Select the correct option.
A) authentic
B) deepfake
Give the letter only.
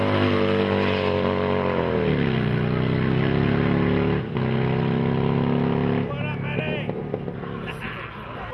A